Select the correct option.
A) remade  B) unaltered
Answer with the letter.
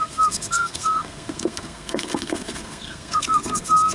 A